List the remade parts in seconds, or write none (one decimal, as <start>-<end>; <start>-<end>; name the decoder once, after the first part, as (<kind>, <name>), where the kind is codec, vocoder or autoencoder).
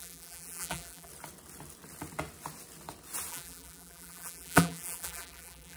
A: 0.0-1.1 (vocoder, BigVGAN v2); 3.3-5.8